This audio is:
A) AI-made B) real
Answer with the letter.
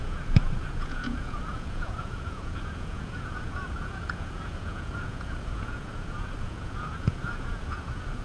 A